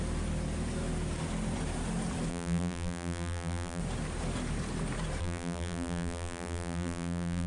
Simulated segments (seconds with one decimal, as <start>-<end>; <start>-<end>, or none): 2.3-3.8; 5.2-7.5